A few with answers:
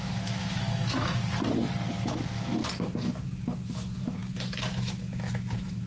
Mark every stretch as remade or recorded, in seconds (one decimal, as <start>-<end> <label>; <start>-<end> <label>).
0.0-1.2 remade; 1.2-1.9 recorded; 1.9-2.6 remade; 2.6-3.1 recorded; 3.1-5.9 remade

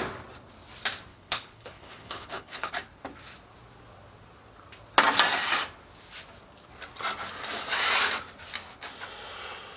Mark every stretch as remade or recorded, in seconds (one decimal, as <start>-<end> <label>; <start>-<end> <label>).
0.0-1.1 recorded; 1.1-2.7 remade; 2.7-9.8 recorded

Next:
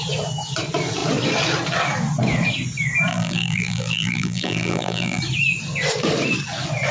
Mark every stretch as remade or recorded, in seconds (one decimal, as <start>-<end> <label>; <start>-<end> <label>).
0.0-3.1 recorded; 3.1-5.2 remade; 5.2-6.9 recorded